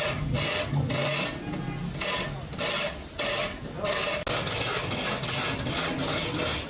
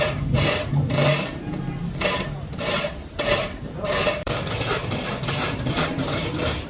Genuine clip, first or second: first